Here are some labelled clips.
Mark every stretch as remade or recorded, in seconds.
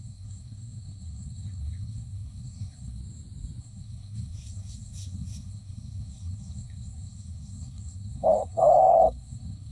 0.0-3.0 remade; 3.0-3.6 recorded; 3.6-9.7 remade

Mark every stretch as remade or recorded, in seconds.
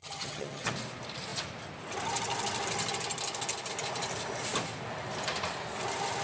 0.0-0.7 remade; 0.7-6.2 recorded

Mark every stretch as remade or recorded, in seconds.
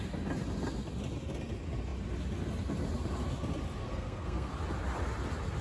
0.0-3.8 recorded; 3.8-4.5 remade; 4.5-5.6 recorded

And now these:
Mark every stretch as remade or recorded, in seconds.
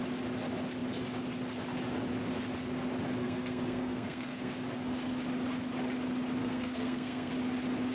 0.0-3.2 recorded; 3.2-4.5 remade; 4.5-6.4 recorded; 6.4-7.3 remade; 7.3-7.9 recorded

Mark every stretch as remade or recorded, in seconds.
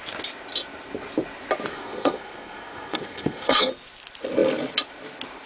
0.0-1.7 recorded; 1.7-3.7 remade; 3.7-5.5 recorded